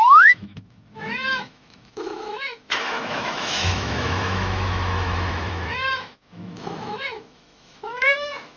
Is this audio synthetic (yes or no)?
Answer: yes